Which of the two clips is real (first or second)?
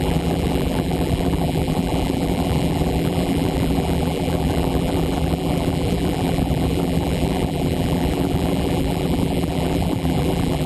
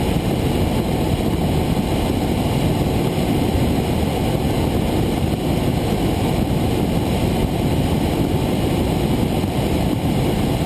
second